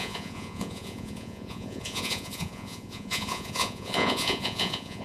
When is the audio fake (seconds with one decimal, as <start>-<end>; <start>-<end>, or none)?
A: 0.0-5.0